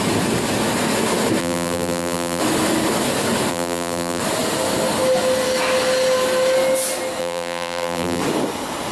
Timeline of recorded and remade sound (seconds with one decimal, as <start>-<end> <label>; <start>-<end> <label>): 0.0-1.4 recorded; 1.4-2.4 remade; 2.4-3.5 recorded; 3.5-4.2 remade; 4.2-7.2 recorded; 7.2-8.2 remade; 8.2-8.9 recorded